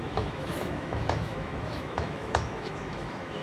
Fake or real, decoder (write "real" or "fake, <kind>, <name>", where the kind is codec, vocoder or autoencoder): fake, autoencoder, DAC-VAE